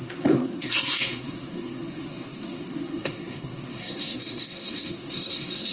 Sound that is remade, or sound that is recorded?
remade